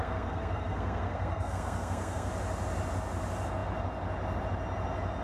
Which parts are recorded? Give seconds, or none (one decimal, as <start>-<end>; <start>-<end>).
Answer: 2.3-5.2